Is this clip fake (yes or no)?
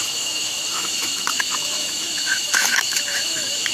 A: yes